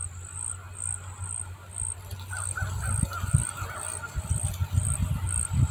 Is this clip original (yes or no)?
yes